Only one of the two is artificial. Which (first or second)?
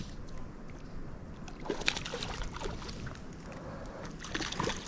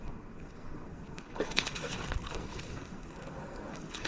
second